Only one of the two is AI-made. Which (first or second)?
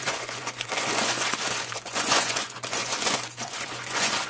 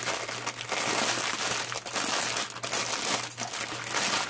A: first